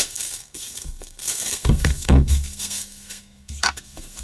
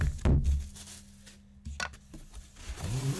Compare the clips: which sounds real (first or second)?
second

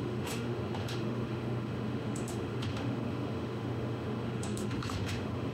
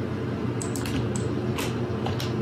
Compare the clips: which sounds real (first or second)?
second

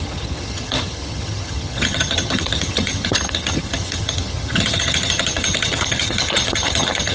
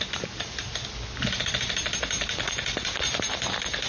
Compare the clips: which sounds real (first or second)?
second